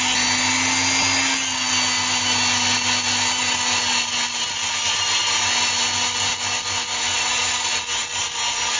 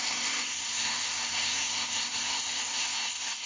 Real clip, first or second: first